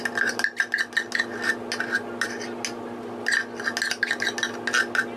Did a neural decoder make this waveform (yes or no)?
no